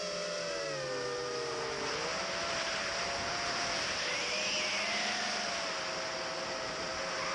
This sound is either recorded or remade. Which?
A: recorded